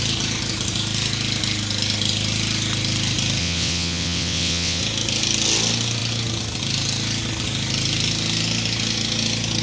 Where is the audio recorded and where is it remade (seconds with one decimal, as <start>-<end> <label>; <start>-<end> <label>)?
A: 0.0-3.4 recorded; 3.4-4.8 remade; 4.8-9.6 recorded